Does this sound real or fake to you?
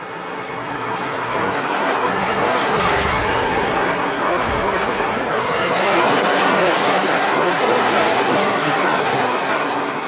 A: fake